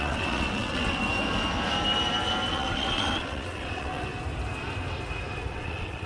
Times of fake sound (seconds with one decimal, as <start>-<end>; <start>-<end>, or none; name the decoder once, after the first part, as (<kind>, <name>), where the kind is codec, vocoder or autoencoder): 0.0-1.0 (vocoder, WaveNeXt); 2.5-4.1; 5.5-6.1

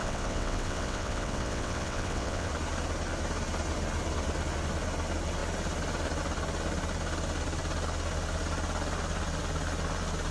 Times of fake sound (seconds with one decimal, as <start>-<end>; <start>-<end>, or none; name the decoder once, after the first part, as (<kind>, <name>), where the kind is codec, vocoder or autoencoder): 0.0-2.5 (vocoder, WaveNeXt)